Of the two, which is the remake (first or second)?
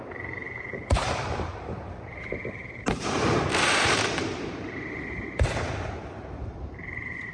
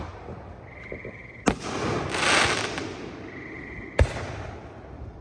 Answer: first